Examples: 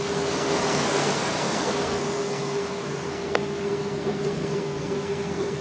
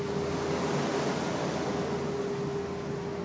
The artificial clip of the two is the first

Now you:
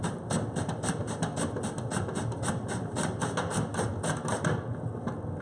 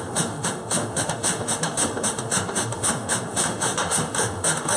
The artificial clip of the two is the second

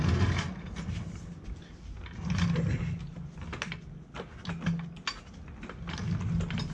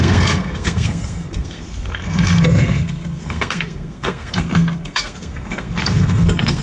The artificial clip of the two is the second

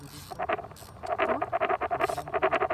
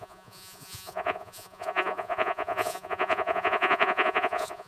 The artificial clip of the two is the second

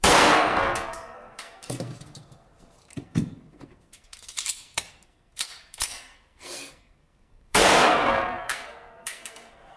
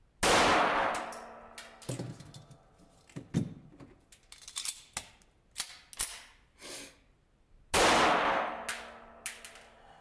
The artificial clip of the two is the first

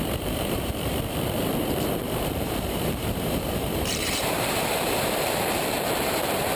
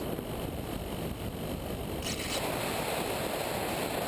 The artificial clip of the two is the first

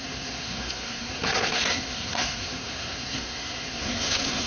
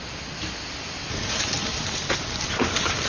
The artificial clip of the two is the first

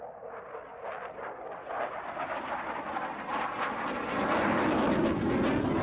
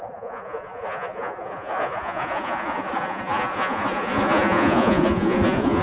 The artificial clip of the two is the second